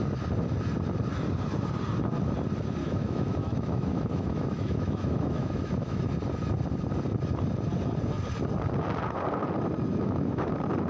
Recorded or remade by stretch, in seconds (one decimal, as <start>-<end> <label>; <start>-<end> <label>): 0.0-2.8 recorded; 2.8-6.0 remade; 6.0-9.9 recorded; 9.9-10.5 remade; 10.5-10.9 recorded